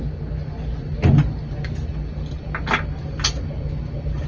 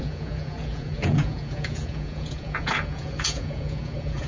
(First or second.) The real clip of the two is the first